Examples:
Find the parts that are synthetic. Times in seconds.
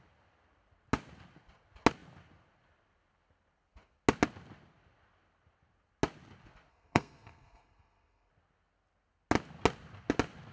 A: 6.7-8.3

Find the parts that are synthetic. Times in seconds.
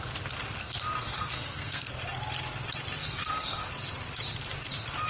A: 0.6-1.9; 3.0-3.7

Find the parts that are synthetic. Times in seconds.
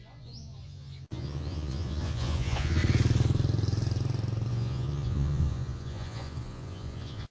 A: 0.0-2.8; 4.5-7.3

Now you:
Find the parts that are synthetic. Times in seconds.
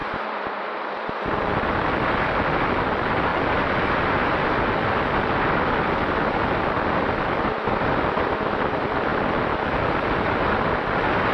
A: 0.0-1.7; 3.3-8.3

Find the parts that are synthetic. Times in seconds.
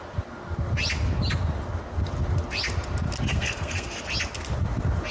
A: 3.3-4.0